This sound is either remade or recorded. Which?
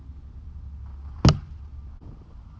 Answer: recorded